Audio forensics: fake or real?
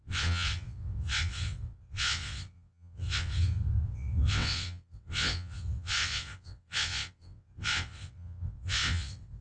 fake